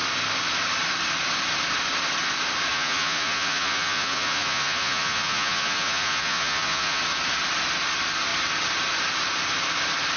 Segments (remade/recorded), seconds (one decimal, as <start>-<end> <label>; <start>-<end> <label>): 0.0-2.7 recorded; 2.7-7.0 remade; 7.0-10.2 recorded